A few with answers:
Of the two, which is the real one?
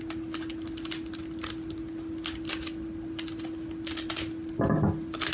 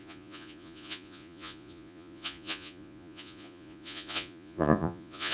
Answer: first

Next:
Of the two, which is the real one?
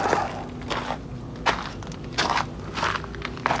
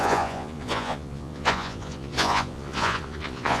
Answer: first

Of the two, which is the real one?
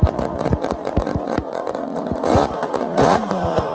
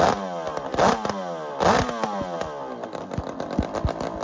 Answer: second